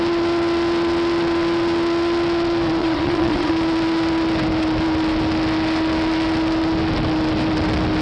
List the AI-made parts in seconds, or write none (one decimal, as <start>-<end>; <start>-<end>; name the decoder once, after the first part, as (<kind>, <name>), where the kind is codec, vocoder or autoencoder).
2.8-3.5 (vocoder, Vocos)